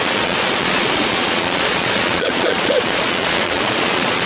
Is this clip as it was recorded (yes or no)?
no